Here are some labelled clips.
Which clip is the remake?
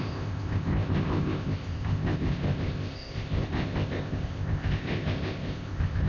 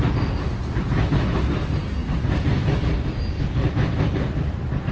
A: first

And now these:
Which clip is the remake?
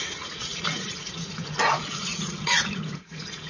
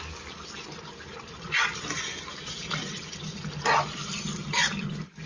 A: first